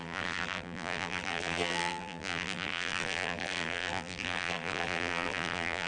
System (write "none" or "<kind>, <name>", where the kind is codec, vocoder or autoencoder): vocoder, BigVGAN v2